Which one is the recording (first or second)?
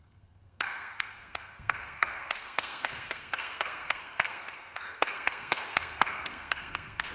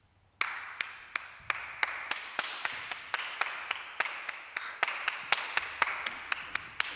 second